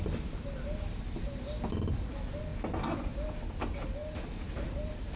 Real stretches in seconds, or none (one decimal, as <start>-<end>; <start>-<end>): 0.0-5.2